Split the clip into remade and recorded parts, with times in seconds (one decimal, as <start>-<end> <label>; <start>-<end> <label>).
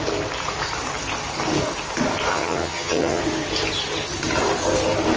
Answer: 0.0-2.3 recorded; 2.3-3.2 remade; 3.2-5.2 recorded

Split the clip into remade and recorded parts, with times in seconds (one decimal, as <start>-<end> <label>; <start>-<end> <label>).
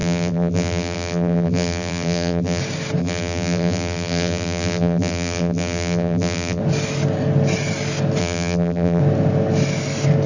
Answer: 0.0-2.6 remade; 2.6-3.0 recorded; 3.0-6.6 remade; 6.6-8.2 recorded; 8.2-9.0 remade; 9.0-10.3 recorded